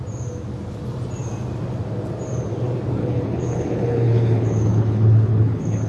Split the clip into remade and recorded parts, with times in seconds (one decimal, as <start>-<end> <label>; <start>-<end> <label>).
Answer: 0.0-3.0 recorded; 3.0-5.9 remade